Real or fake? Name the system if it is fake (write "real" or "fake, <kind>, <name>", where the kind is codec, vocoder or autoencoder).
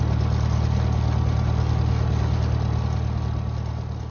real